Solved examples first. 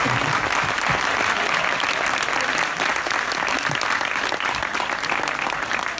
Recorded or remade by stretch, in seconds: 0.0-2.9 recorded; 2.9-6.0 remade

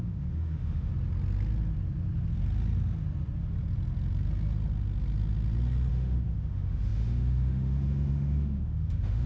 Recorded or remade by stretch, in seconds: 0.0-0.9 remade; 0.9-5.9 recorded; 5.9-9.3 remade

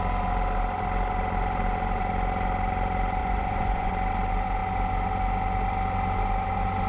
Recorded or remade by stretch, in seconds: 0.0-3.2 recorded; 3.2-3.9 remade; 3.9-6.9 recorded

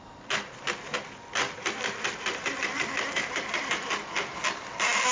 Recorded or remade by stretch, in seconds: 0.0-5.1 recorded

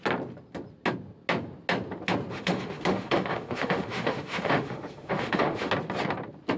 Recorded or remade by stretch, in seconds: 0.0-2.3 recorded; 2.3-5.7 remade; 5.7-6.6 recorded

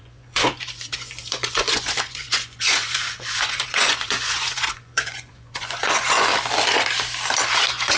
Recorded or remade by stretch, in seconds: 0.0-6.3 remade; 6.3-7.6 recorded; 7.6-8.0 remade

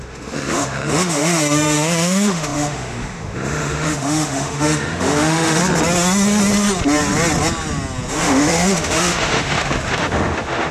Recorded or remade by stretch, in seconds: 0.0-5.6 remade; 5.6-8.1 recorded; 8.1-10.7 remade

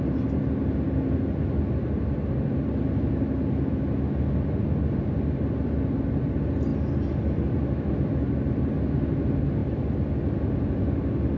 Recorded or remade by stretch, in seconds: 0.0-11.4 recorded